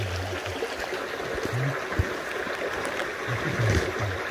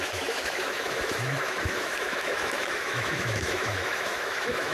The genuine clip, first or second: first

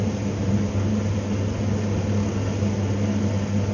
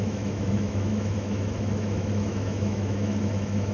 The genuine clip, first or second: first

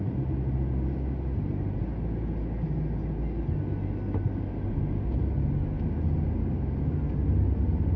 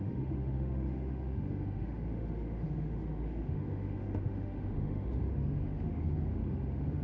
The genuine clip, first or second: first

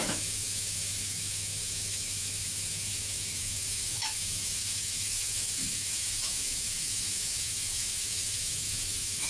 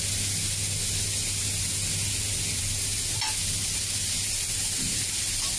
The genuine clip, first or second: second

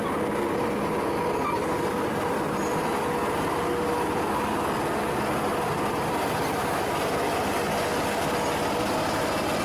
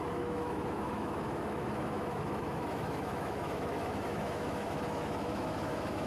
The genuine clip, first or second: first